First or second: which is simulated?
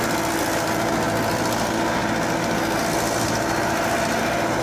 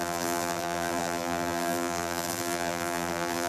second